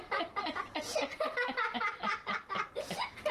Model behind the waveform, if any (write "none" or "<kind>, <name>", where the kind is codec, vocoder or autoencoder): none